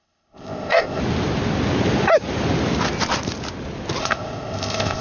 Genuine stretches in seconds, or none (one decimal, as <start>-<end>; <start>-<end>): 1.0-4.0